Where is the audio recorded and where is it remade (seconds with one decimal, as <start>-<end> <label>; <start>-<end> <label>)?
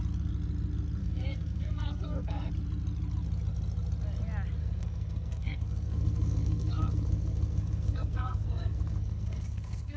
0.0-1.0 recorded; 1.0-2.5 remade; 2.5-4.6 recorded; 4.6-10.0 remade